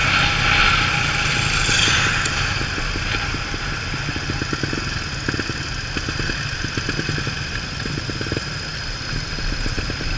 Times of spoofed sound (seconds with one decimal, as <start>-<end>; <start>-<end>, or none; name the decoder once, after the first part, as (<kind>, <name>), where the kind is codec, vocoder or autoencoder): none